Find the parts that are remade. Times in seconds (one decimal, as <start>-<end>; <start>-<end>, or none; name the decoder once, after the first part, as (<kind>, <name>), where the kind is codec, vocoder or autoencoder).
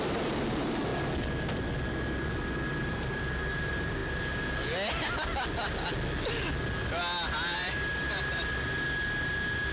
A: 0.0-0.9 (vocoder, BigVGAN v2); 3.5-4.0